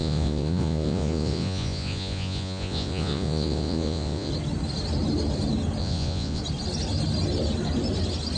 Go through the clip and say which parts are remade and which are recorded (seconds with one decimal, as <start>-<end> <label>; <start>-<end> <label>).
0.0-4.3 remade; 4.3-5.8 recorded; 5.8-6.4 remade; 6.4-8.4 recorded